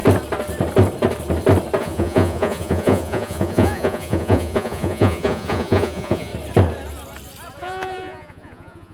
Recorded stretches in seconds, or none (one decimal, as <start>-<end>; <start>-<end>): 0.0-1.8; 6.3-7.6